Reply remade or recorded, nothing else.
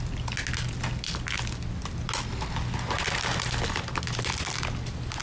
recorded